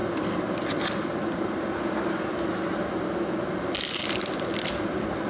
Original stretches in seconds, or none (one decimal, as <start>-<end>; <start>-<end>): 0.0-5.3